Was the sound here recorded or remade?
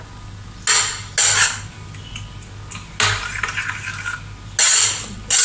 recorded